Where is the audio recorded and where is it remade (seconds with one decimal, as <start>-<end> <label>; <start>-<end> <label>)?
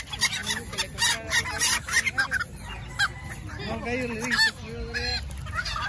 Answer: 0.0-5.9 recorded